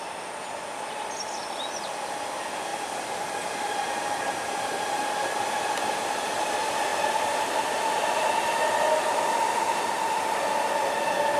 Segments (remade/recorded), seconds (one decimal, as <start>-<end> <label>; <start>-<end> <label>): 0.0-11.4 recorded